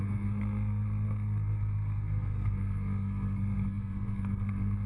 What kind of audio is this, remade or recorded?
remade